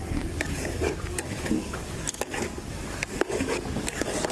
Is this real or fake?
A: fake